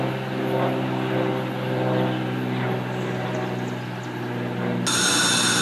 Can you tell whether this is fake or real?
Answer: real